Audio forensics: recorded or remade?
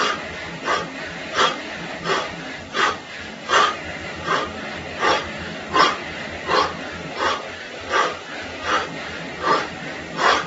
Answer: recorded